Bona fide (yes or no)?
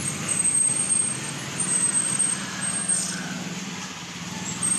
no